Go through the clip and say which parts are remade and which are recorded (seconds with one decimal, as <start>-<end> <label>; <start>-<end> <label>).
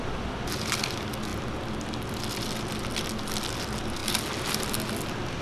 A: 0.0-5.4 recorded